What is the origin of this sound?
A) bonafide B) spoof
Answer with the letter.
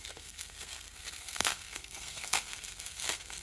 B